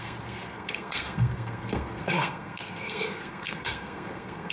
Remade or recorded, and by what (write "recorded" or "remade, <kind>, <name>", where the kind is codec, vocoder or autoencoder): remade, codec, SNAC